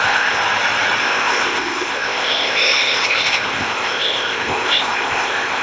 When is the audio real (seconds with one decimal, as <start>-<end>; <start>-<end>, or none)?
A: 0.4-1.0